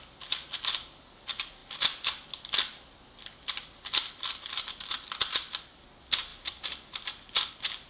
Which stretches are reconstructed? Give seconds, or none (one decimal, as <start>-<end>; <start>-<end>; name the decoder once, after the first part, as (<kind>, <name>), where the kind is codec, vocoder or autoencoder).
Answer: none